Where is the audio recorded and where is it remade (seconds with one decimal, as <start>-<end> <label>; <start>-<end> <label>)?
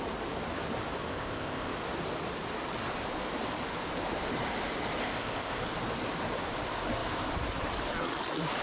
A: 0.0-1.1 recorded; 1.1-1.7 remade; 1.7-5.0 recorded; 5.0-5.6 remade; 5.6-8.6 recorded